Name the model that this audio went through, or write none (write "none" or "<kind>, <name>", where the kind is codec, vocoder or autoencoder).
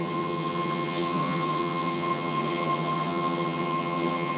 vocoder, HiFi-GAN